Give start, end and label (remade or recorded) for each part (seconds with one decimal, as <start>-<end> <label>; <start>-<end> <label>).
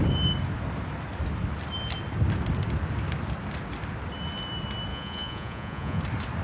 0.0-4.9 recorded; 4.9-6.0 remade; 6.0-6.4 recorded